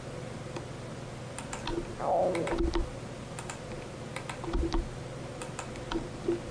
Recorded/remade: recorded